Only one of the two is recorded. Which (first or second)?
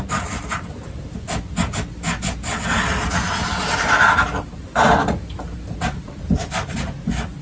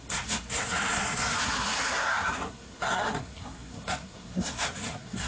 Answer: first